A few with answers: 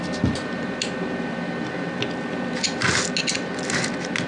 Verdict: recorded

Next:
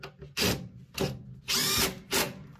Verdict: recorded